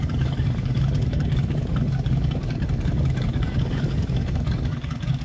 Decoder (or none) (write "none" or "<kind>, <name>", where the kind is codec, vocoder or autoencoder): codec, DAC